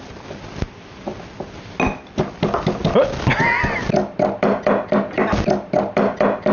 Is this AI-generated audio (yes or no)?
no